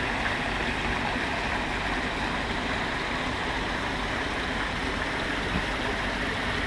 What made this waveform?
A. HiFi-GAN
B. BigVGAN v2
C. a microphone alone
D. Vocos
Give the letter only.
C